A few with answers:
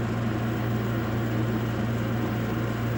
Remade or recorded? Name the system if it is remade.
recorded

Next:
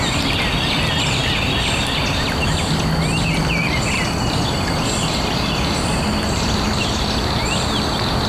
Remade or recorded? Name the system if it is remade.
recorded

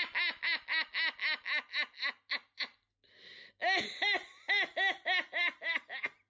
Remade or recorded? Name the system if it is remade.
recorded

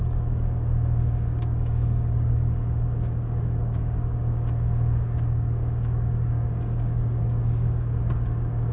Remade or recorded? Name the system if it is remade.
remade, codec, DAC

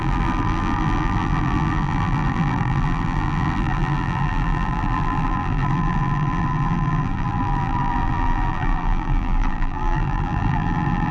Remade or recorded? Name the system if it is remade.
remade, vocoder, BigVGAN v2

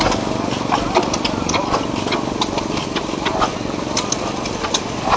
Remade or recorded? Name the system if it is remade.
recorded